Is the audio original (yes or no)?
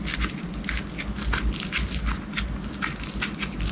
yes